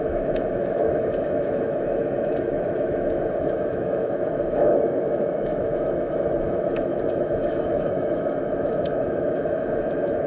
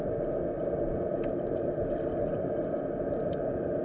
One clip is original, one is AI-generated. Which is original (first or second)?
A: second